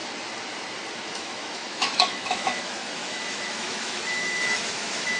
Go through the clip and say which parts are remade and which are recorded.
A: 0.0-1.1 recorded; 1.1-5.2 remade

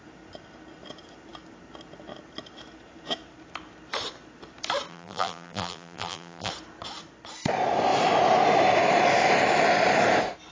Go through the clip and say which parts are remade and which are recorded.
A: 0.0-4.9 recorded; 4.9-6.5 remade; 6.5-10.5 recorded

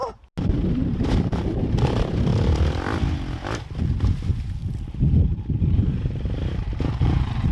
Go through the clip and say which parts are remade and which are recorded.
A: 0.0-0.7 recorded; 0.7-2.3 remade; 2.3-4.0 recorded; 4.0-4.6 remade; 4.6-5.2 recorded; 5.2-7.5 remade

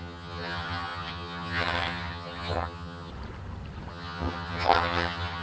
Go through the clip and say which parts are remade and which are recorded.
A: 0.0-3.1 remade; 3.1-3.9 recorded; 3.9-5.4 remade

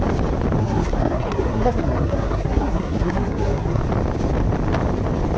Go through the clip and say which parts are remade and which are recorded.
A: 0.0-0.6 recorded; 0.6-3.8 remade; 3.8-5.4 recorded

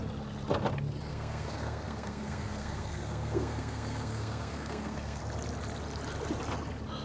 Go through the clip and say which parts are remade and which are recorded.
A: 0.0-1.1 recorded; 1.1-5.2 remade; 5.2-7.0 recorded

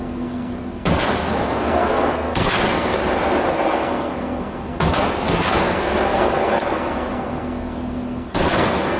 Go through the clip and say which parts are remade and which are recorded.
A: 0.0-3.0 remade; 3.0-3.5 recorded; 3.5-9.0 remade